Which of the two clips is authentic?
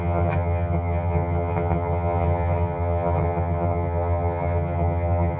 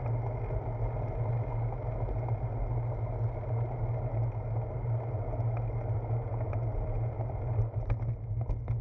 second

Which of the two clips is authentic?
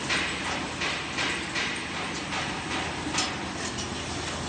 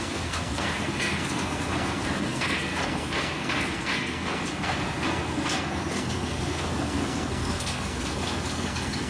first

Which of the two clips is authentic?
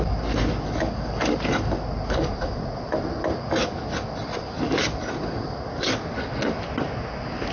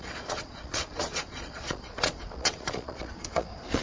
first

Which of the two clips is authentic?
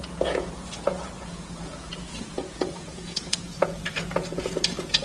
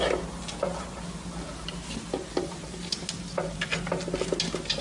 second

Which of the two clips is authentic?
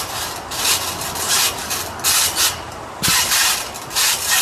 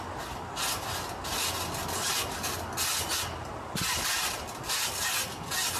second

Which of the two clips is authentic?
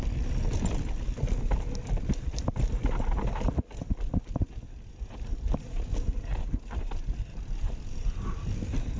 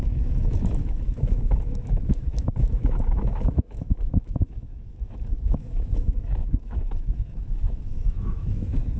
first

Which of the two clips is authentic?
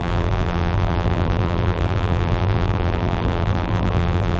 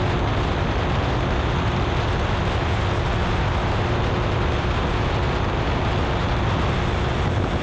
second